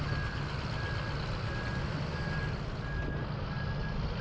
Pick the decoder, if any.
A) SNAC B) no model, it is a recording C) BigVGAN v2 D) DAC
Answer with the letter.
B